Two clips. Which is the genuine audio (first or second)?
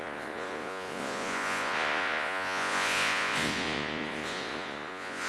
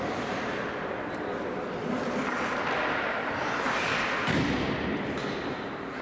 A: second